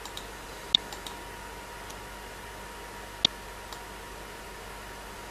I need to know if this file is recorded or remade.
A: recorded